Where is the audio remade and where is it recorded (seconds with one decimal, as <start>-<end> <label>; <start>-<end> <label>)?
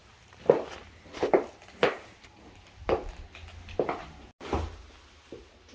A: 0.0-5.7 recorded